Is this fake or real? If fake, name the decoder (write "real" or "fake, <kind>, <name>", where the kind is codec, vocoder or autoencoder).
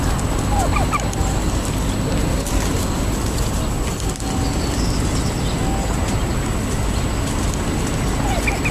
real